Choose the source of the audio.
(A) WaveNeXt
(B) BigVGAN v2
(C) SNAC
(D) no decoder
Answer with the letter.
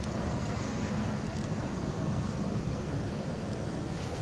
C